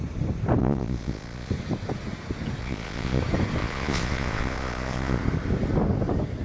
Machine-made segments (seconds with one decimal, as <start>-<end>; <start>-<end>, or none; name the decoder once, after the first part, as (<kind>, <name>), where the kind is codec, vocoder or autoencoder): 0.6-1.5 (vocoder, Vocos); 2.6-3.2; 3.6-5.2